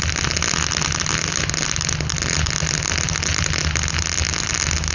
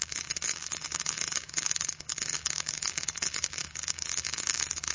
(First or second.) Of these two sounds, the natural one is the first